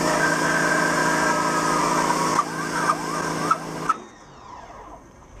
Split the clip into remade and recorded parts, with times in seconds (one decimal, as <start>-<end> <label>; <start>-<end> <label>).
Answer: 0.0-1.0 remade; 1.0-1.8 recorded; 1.8-2.3 remade; 2.3-4.5 recorded; 4.5-5.4 remade